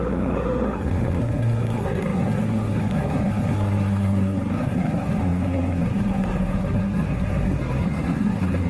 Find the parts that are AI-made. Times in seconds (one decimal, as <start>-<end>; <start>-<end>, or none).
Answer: 0.0-8.7

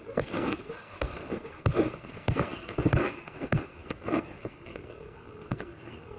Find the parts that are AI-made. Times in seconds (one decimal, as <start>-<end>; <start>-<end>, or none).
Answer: 0.0-6.2

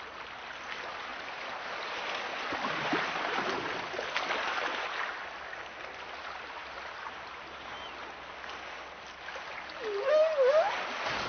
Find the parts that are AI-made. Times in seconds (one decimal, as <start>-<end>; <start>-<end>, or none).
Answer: 1.1-1.6

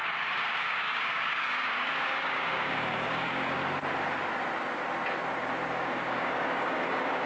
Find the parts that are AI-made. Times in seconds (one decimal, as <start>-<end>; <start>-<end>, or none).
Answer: 0.0-3.6; 5.7-7.3

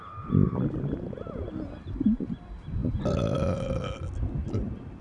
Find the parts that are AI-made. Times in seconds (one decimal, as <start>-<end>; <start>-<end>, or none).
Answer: none

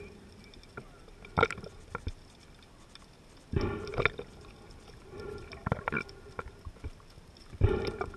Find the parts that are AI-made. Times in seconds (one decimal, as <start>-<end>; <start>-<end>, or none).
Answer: none